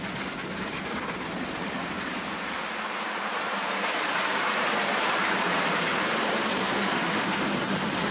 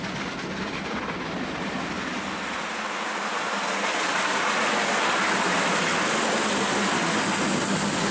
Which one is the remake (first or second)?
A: first